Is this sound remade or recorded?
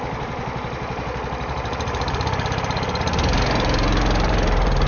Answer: remade